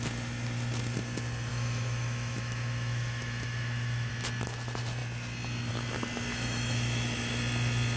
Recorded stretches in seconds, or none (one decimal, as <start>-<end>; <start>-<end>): 0.0-1.5; 4.1-6.3; 7.4-8.0